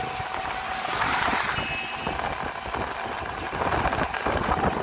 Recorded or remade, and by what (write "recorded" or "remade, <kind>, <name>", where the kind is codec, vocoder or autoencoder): recorded